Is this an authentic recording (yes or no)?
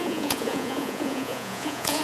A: no